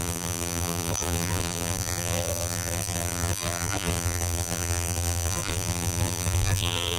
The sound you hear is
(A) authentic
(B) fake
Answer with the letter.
B